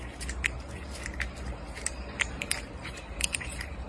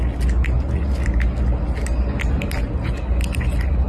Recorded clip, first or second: second